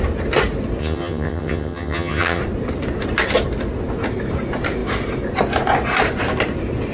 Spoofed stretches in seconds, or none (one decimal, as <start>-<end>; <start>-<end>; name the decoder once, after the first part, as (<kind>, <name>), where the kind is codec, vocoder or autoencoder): 0.8-2.4 (vocoder, HiFi-GAN)